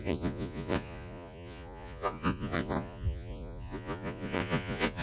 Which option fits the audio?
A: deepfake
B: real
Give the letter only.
A